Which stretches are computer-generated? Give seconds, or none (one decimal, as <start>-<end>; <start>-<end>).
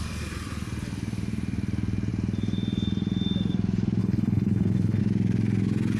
4.0-5.0